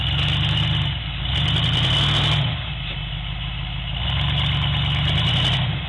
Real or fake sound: real